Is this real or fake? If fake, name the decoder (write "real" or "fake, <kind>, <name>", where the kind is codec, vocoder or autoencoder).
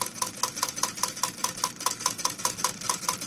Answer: real